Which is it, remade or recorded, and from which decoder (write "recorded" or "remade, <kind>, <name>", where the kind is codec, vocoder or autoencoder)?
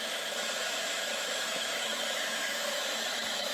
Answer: remade, autoencoder, DAC-VAE